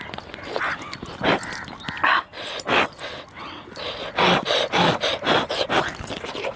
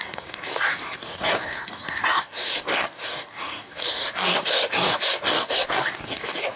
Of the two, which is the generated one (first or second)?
second